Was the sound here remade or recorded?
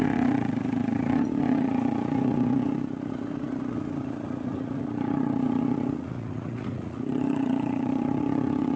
remade